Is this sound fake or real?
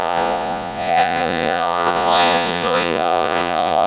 fake